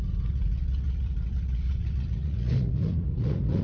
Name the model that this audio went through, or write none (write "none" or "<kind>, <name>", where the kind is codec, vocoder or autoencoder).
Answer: vocoder, Vocos